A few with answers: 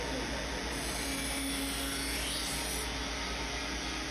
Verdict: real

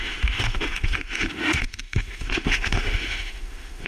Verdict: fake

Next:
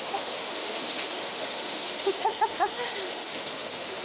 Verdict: fake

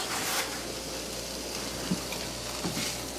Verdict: real